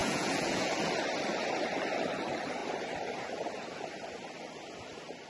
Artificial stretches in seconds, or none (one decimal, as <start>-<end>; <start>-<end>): 0.0-0.7